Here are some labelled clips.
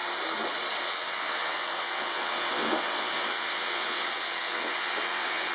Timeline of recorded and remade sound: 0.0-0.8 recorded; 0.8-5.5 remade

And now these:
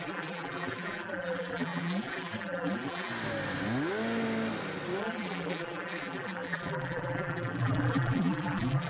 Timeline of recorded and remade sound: 0.0-3.1 remade; 3.1-5.0 recorded; 5.0-8.9 remade

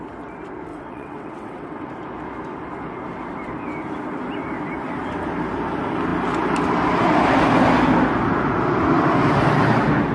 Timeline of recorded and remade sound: 0.0-0.7 recorded; 0.7-1.9 remade; 1.9-10.1 recorded